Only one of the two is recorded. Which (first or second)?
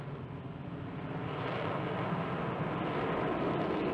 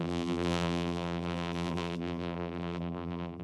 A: first